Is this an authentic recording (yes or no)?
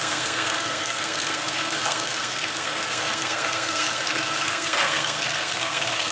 no